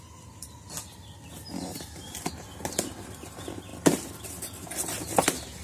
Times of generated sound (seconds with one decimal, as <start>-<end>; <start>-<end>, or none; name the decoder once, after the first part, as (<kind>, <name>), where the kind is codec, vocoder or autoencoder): none